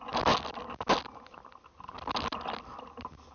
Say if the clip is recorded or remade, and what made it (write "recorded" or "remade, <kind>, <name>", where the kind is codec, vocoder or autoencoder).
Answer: recorded